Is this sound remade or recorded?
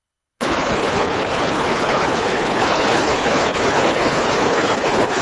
remade